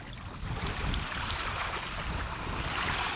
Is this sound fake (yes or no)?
no